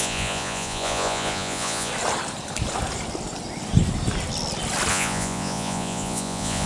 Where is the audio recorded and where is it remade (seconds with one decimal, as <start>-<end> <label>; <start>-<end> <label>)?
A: 0.0-1.9 remade; 1.9-4.9 recorded; 4.9-6.7 remade